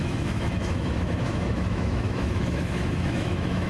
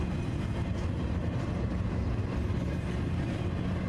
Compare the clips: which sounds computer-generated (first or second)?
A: first